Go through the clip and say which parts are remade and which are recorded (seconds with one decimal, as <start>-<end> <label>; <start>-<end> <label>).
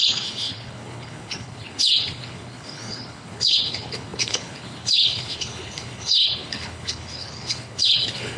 0.0-8.4 remade